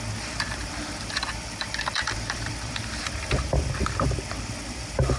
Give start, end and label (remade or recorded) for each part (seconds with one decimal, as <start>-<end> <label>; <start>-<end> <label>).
0.0-0.6 recorded; 0.6-3.6 remade; 3.6-5.2 recorded